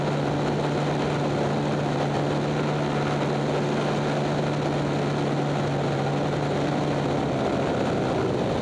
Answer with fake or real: real